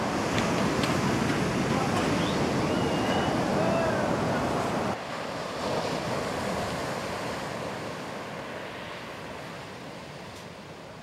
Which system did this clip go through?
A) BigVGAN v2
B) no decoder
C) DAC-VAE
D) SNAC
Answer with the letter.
B